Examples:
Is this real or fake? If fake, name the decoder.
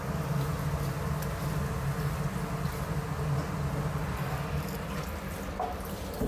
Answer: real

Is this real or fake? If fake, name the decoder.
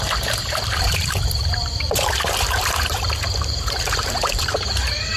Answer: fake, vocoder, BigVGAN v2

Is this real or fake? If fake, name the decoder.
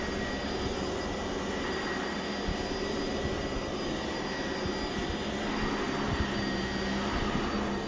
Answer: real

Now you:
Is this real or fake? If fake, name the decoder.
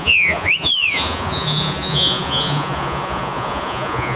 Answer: fake, vocoder, Vocos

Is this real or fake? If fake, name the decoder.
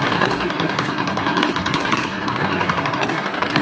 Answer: fake, codec, SNAC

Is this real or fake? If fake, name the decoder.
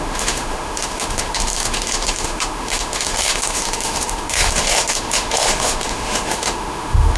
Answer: fake, autoencoder, DAC-VAE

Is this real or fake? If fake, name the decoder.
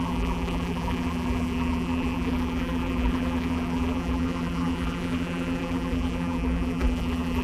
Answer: fake, vocoder, BigVGAN v2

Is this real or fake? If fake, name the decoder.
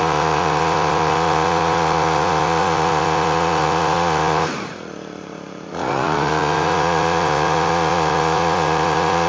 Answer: fake, vocoder, Vocos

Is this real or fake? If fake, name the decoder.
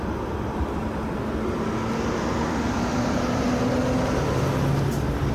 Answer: real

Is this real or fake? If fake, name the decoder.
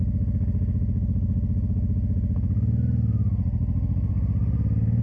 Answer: real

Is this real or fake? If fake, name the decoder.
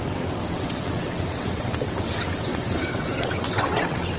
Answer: fake, vocoder, WaveNeXt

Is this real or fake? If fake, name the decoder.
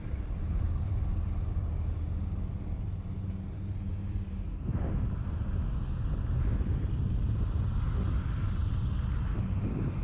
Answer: real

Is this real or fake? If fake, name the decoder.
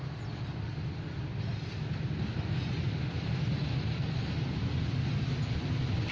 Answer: real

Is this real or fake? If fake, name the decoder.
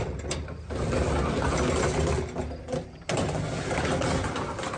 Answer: real